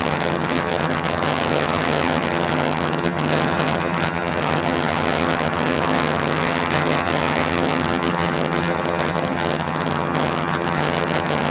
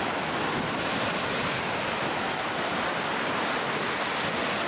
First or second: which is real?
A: second